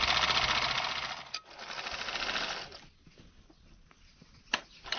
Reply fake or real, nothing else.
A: real